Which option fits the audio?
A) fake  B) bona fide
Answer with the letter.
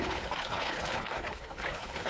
A